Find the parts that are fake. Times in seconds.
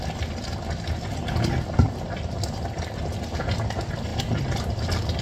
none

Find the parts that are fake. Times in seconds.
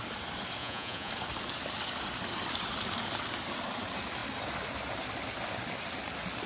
0.6-1.1